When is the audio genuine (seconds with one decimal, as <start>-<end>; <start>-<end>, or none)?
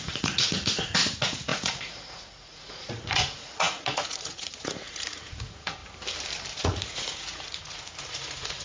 5.8-6.5